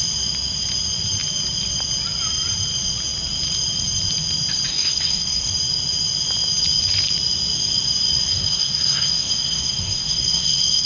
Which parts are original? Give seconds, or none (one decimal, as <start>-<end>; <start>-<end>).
0.0-4.7; 5.5-8.3